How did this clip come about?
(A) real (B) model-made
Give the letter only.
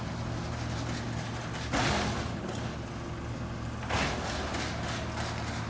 A